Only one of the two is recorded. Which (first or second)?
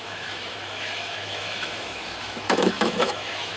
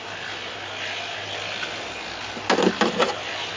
second